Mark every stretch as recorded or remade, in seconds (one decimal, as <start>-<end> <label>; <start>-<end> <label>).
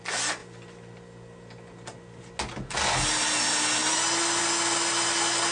0.0-5.5 recorded